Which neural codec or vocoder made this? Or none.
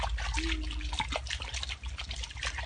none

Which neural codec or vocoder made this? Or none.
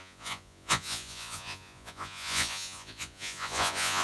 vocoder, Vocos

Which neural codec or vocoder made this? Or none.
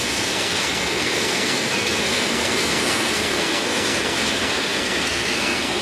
codec, SNAC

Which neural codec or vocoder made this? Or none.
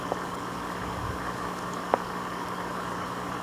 codec, DAC